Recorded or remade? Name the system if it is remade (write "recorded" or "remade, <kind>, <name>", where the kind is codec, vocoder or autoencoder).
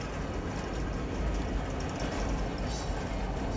recorded